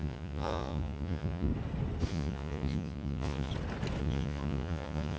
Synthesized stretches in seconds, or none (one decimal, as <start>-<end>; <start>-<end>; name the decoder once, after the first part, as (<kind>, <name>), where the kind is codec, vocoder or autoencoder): 0.0-1.5 (vocoder, Vocos); 2.1-3.5; 4.0-5.2

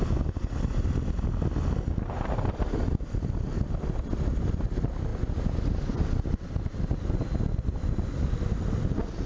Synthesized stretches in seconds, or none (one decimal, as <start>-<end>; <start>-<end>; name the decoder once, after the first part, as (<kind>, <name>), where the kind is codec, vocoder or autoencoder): none

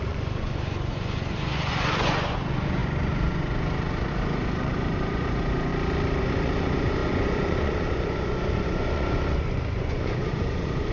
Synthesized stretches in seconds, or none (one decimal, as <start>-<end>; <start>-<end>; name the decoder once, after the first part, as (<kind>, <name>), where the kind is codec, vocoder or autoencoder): 0.0-5.7 (vocoder, Vocos); 6.2-10.9

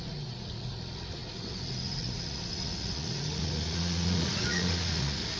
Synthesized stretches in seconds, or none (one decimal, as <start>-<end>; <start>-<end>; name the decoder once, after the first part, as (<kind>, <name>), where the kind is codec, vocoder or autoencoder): 0.0-5.4 (vocoder, Vocos)

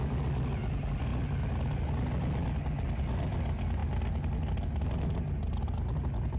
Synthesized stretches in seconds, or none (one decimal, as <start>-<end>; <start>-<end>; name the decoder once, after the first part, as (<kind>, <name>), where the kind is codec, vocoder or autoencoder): none

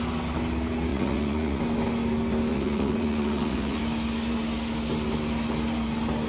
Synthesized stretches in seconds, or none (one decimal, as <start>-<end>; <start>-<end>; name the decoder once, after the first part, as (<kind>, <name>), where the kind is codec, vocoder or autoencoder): 0.9-1.6 (vocoder, Vocos); 2.5-3.8